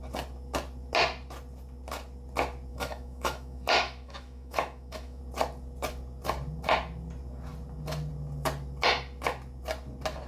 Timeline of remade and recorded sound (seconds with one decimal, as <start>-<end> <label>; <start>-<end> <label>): 0.0-2.7 recorded; 2.7-5.2 remade; 5.2-10.3 recorded